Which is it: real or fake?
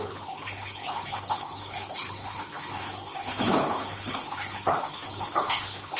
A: fake